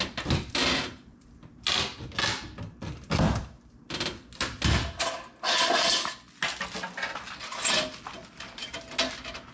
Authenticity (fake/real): real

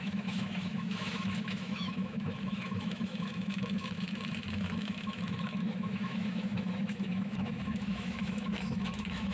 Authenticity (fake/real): fake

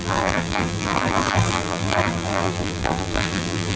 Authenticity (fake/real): fake